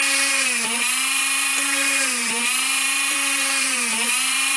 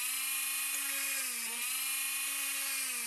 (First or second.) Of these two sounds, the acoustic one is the second